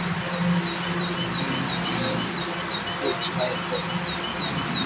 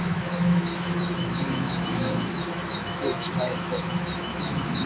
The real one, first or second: first